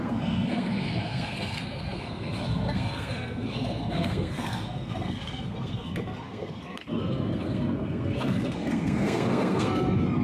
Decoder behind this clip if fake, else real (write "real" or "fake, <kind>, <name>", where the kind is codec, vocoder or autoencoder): fake, codec, SNAC